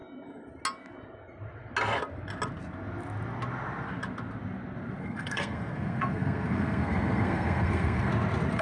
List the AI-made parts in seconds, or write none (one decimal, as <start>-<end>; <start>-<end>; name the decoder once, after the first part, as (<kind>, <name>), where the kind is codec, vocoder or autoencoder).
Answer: 5.0-8.1 (codec, SNAC)